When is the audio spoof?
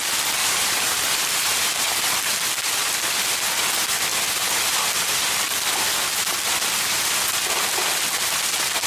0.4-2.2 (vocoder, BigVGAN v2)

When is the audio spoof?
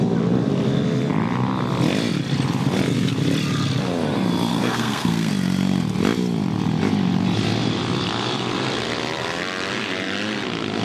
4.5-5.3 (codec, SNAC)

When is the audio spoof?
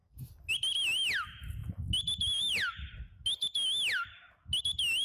none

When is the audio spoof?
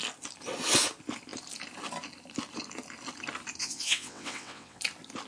3.6-4.8 (vocoder, WaveNeXt)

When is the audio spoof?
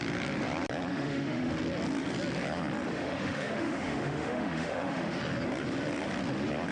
0.9-1.5 (autoencoder, DAC-VAE); 2.9-5.2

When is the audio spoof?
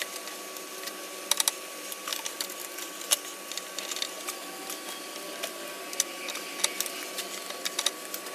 none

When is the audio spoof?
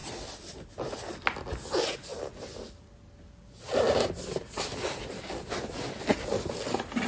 none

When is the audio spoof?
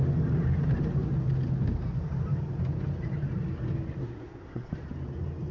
4.0-4.7 (codec, SNAC)